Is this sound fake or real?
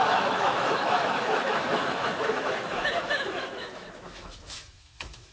fake